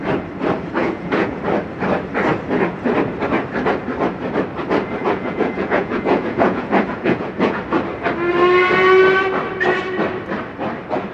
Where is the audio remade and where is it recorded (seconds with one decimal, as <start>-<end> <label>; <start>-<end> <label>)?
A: 0.0-0.8 recorded; 0.8-1.4 remade; 1.4-5.0 recorded; 5.0-7.6 remade; 7.6-11.1 recorded